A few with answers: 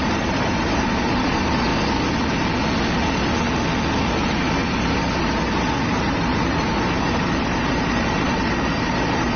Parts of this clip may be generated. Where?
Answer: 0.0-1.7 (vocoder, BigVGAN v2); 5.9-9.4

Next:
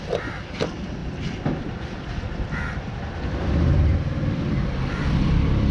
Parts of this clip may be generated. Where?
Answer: 0.0-5.7 (vocoder, BigVGAN v2)

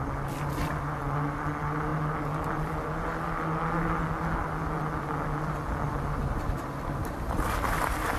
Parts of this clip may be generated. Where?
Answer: none

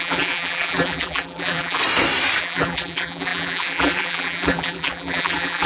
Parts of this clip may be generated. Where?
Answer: 0.0-1.8 (vocoder, BigVGAN v2); 2.4-5.7

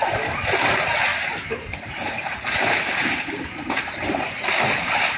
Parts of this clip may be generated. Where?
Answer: 1.1-4.2 (vocoder, BigVGAN v2)

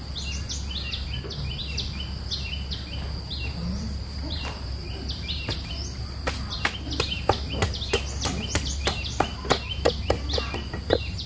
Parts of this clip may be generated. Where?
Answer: 3.8-5.7 (vocoder, BigVGAN v2)

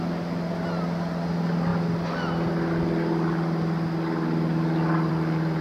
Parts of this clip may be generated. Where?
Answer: none

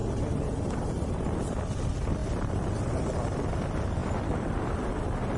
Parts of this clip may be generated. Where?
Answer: 0.0-1.1 (vocoder, BigVGAN v2); 2.2-3.6; 4.0-4.8